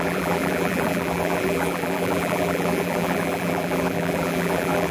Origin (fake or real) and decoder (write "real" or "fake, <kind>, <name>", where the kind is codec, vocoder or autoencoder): fake, vocoder, BigVGAN v2